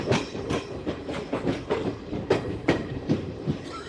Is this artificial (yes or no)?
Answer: yes